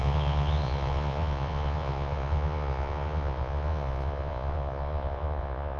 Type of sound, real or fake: fake